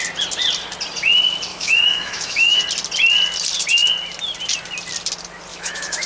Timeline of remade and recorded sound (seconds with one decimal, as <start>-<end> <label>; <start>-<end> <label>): 0.0-1.5 recorded; 1.5-2.6 remade; 2.6-5.5 recorded; 5.5-6.1 remade